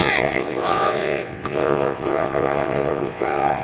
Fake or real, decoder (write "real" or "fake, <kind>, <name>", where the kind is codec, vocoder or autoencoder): fake, vocoder, WaveNeXt